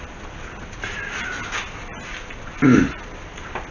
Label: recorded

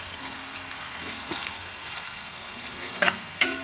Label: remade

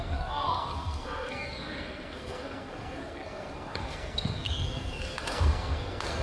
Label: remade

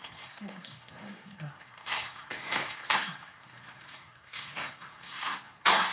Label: remade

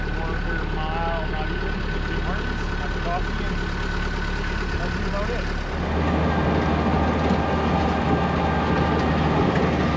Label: recorded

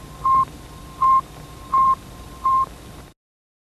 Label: recorded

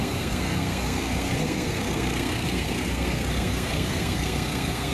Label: remade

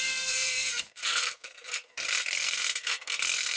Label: remade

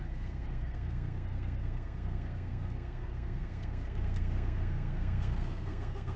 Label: remade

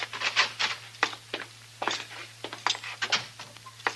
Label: recorded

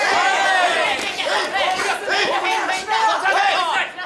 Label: recorded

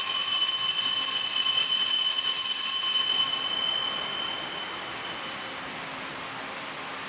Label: recorded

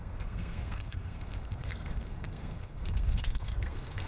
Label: remade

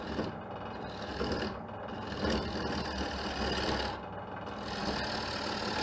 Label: recorded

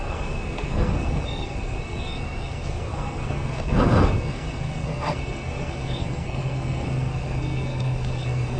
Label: remade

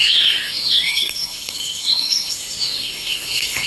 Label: remade